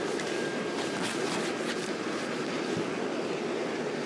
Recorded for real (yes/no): no